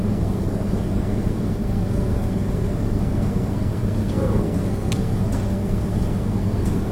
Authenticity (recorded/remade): remade